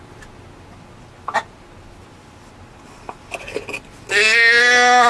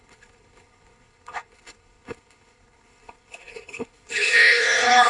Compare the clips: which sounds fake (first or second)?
second